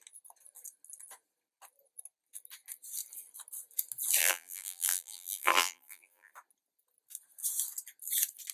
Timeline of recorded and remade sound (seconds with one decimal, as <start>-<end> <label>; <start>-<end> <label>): 0.0-4.2 recorded; 4.2-6.3 remade; 6.3-8.5 recorded